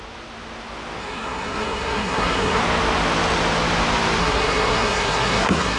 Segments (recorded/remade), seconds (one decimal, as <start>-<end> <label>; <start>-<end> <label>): 0.0-1.0 recorded; 1.0-2.6 remade; 2.6-4.2 recorded; 4.2-5.8 remade